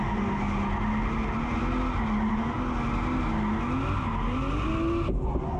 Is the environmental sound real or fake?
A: real